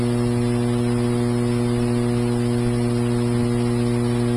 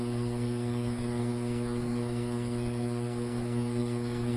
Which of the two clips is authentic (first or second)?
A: first